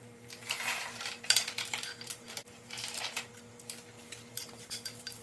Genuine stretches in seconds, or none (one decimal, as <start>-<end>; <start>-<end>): 3.3-4.3